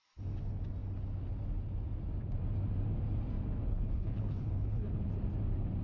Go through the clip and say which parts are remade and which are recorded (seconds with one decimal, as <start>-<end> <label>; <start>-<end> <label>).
0.0-3.7 recorded; 3.7-4.9 remade; 4.9-5.8 recorded